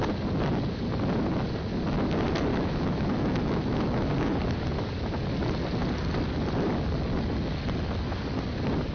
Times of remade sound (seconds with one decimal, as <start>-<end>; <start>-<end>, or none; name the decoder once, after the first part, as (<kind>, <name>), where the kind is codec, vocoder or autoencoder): 2.5-4.1 (autoencoder, DAC-VAE)